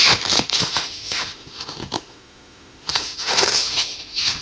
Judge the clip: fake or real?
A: fake